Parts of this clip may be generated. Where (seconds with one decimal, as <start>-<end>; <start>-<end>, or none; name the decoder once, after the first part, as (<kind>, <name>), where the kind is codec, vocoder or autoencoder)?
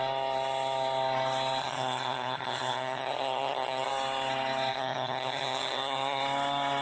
1.6-3.9 (vocoder, HiFi-GAN); 4.7-6.2